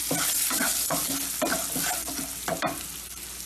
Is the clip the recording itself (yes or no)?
yes